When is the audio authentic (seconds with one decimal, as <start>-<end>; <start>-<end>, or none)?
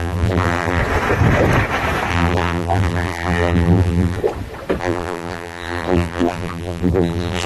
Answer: 0.8-2.1; 4.2-4.8